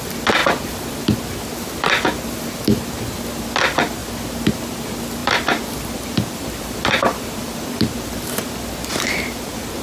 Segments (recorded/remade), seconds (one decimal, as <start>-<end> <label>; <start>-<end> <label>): 0.0-0.4 recorded; 0.4-1.0 remade; 1.0-5.2 recorded; 5.2-9.8 remade